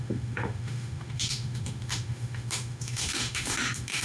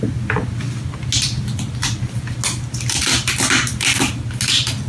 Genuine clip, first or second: second